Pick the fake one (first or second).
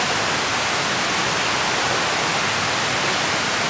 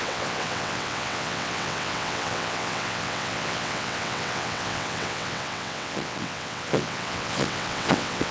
second